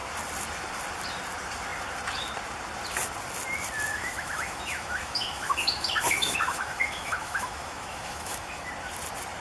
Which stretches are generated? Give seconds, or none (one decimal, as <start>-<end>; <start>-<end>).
3.9-8.7